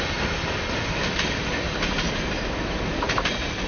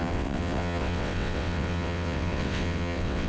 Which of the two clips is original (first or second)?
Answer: first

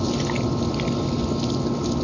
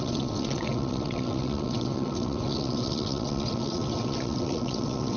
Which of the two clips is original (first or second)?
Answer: first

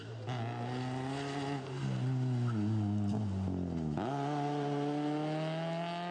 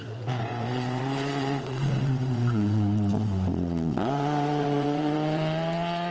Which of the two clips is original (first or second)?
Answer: first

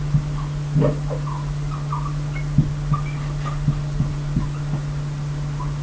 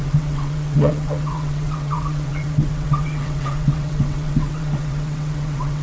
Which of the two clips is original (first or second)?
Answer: first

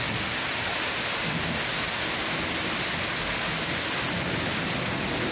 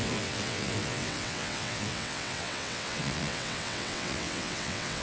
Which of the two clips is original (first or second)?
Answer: first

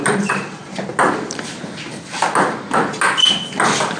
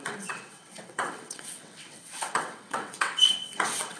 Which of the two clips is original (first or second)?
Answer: first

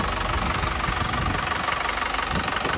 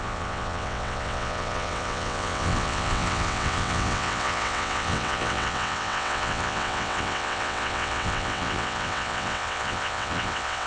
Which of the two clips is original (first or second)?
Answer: first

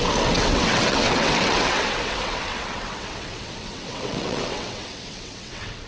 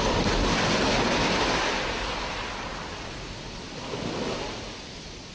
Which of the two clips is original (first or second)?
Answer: second